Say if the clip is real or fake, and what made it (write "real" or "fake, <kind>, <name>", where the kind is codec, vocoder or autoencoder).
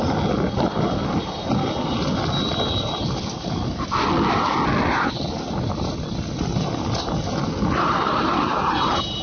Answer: real